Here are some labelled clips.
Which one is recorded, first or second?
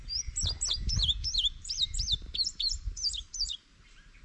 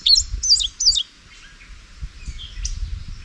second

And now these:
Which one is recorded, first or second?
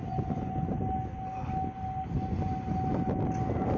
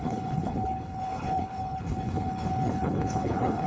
first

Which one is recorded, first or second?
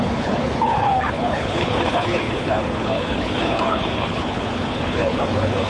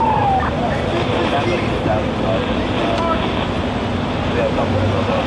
second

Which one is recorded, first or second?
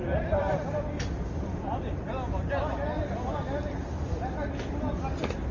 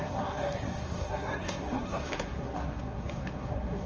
first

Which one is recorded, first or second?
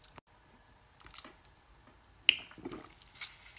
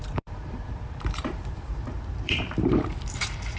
first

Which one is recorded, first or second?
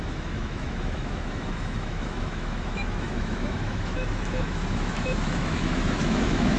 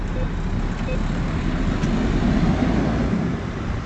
second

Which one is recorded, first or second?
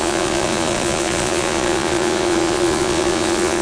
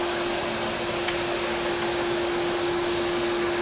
second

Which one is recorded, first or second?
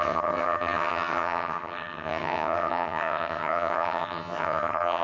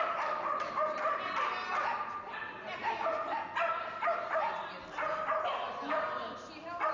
second